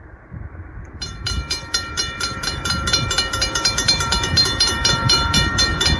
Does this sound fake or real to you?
fake